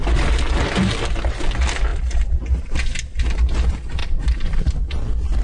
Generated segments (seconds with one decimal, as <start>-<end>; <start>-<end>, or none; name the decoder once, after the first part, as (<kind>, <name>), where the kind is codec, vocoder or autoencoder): 1.9-2.6 (vocoder, BigVGAN v2); 4.0-4.7